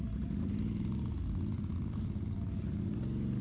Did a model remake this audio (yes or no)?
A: no